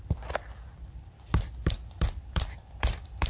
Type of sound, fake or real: fake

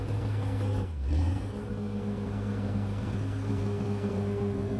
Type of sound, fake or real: fake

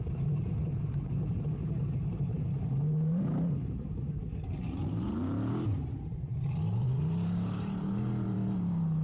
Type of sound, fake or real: fake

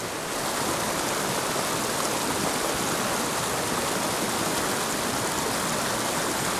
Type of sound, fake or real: real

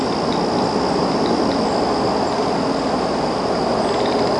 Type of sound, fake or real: real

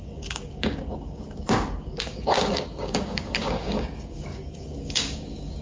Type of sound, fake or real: fake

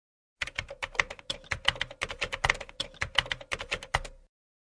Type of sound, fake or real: real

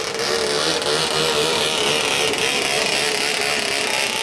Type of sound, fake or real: real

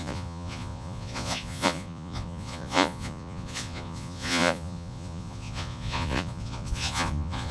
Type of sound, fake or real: fake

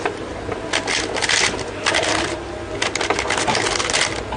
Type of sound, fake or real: real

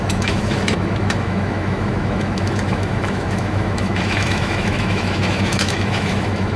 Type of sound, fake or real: fake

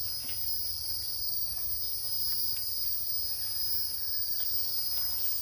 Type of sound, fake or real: real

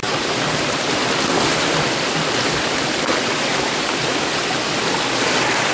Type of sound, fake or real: real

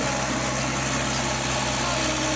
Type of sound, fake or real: real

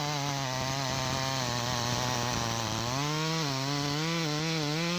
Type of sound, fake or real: real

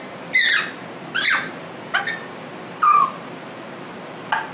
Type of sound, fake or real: real